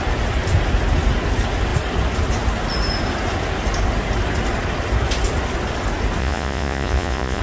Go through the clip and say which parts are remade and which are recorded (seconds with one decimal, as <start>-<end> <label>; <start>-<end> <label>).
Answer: 0.0-6.2 recorded; 6.2-7.4 remade